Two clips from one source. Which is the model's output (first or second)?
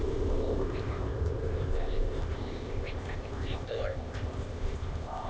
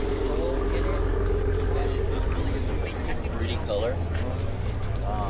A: first